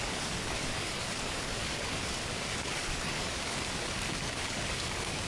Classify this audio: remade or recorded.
remade